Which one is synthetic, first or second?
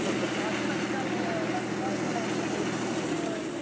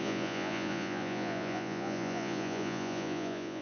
second